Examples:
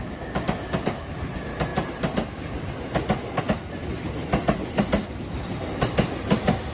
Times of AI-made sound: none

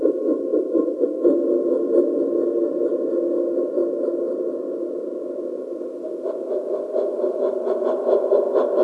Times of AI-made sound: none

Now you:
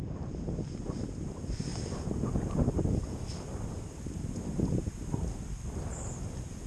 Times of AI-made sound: none

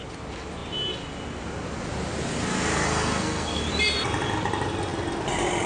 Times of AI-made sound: 2.7-3.6 (codec, SNAC)